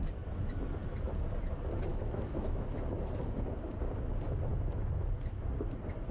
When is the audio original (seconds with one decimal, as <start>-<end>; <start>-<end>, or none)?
0.0-1.9; 3.2-4.5; 5.1-6.1